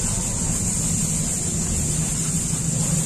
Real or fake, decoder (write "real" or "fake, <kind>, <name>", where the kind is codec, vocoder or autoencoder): real